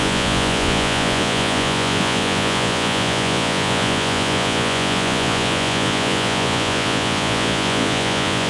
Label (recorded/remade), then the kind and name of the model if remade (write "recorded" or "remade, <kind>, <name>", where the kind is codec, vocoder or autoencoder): remade, vocoder, Vocos